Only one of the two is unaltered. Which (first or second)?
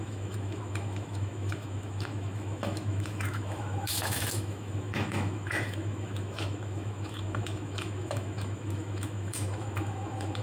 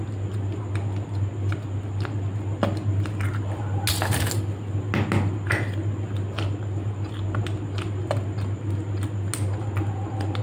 second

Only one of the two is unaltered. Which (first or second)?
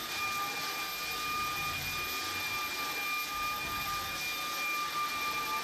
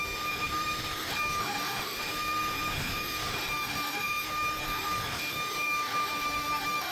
first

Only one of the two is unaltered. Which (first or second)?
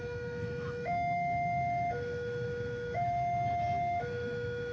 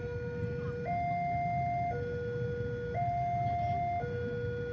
second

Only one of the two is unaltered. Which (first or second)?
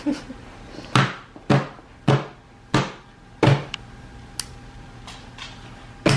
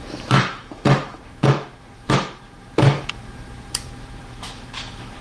first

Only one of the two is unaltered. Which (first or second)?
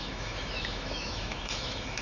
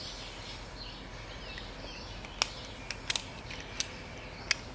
second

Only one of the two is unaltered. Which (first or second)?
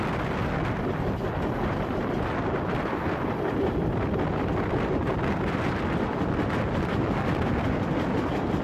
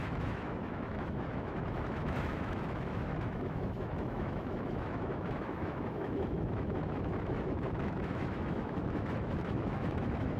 first